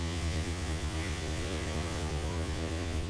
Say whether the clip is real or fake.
fake